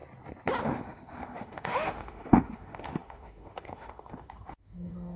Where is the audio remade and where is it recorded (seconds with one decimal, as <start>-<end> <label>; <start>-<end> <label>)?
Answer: 0.0-0.6 recorded; 0.6-5.2 remade